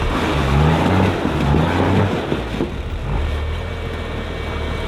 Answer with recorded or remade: recorded